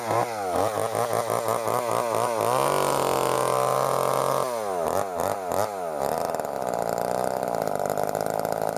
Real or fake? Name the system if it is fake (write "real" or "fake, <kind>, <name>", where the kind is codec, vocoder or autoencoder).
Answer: real